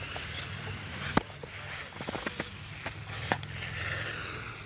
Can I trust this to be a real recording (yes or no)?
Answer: yes